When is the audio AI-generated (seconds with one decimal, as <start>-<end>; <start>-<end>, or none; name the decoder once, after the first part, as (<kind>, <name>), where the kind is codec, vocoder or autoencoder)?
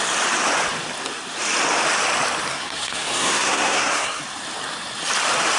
2.5-4.2 (codec, SNAC)